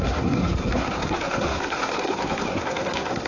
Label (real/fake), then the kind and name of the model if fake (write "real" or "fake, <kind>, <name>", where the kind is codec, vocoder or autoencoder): fake, codec, SNAC